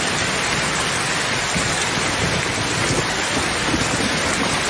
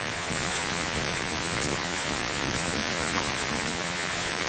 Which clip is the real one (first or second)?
first